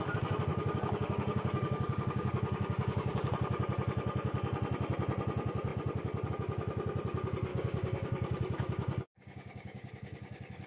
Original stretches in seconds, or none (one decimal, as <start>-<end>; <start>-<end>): 0.0-0.5; 3.3-7.5